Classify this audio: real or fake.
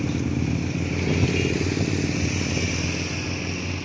real